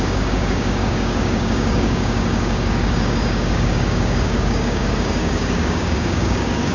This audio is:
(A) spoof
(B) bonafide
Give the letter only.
A